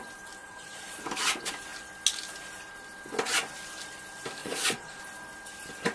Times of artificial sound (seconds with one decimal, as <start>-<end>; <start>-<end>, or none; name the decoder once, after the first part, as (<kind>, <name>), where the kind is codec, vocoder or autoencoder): 0.4-1.0 (vocoder, Vocos); 4.4-5.0